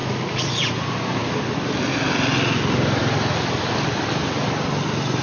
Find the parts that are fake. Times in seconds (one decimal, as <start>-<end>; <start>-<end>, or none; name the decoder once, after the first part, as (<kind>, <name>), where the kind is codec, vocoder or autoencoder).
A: 0.0-0.5 (vocoder, Vocos)